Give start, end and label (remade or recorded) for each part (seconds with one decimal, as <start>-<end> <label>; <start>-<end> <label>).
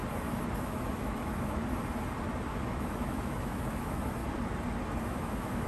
0.0-0.5 recorded; 0.5-1.6 remade; 1.6-2.5 recorded; 2.5-4.2 remade; 4.2-5.0 recorded; 5.0-5.7 remade